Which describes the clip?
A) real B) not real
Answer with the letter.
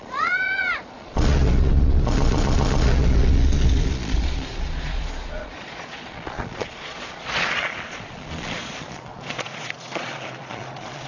B